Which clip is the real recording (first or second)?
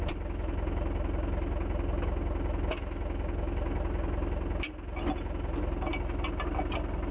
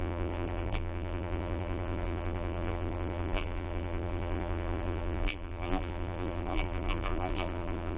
first